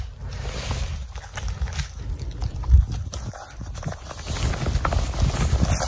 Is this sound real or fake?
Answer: real